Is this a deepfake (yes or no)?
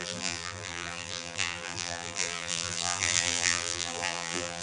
yes